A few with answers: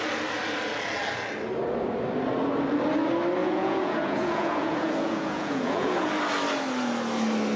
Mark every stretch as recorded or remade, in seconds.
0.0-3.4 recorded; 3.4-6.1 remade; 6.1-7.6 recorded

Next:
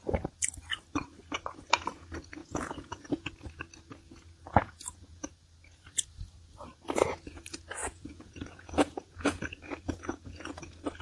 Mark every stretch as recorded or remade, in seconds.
0.0-2.4 recorded; 2.4-3.3 remade; 3.3-4.5 recorded; 4.5-5.3 remade; 5.3-7.8 recorded; 7.8-10.6 remade; 10.6-11.0 recorded

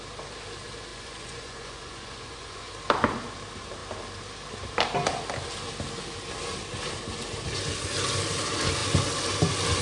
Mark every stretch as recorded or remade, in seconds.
0.0-0.9 recorded; 0.9-2.7 remade; 2.7-9.8 recorded

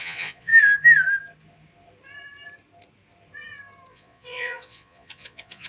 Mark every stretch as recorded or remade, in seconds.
0.0-0.5 remade; 0.5-3.9 recorded; 3.9-5.7 remade

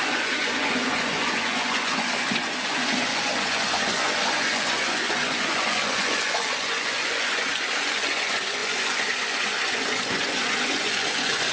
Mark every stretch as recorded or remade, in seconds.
0.0-11.5 remade

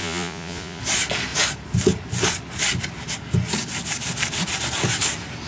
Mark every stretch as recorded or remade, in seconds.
0.0-0.8 remade; 0.8-5.5 recorded